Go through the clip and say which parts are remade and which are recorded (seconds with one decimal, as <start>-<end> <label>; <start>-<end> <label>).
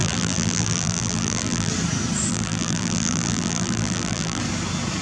0.0-1.7 remade; 1.7-2.3 recorded; 2.3-4.4 remade; 4.4-5.0 recorded